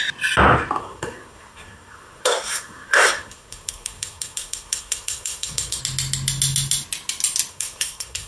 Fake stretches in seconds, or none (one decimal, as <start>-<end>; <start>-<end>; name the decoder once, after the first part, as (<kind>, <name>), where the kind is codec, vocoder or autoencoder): 0.8-5.8 (codec, SNAC); 7.5-8.3